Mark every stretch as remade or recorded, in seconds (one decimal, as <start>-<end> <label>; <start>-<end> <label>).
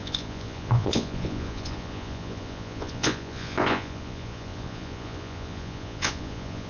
0.0-6.7 remade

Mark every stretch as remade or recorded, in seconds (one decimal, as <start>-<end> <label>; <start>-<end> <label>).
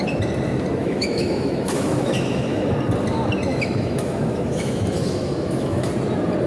0.0-0.8 recorded; 0.8-2.7 remade; 2.7-3.5 recorded; 3.5-5.9 remade; 5.9-6.5 recorded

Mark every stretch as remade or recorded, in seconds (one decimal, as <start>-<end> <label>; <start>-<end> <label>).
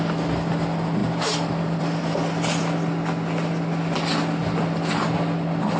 0.0-2.2 remade; 2.2-5.8 recorded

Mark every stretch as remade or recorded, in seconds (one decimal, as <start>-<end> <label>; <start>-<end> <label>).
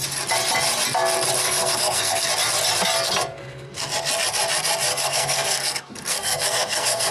0.0-1.4 recorded; 1.4-2.3 remade; 2.3-3.3 recorded; 3.3-3.9 remade; 3.9-4.9 recorded; 4.9-7.1 remade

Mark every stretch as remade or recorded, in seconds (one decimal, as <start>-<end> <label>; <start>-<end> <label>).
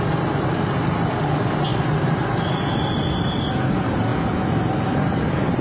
0.0-5.6 recorded